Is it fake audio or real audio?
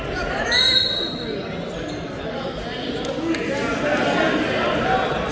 real